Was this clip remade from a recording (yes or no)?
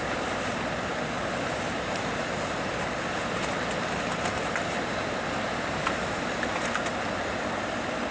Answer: no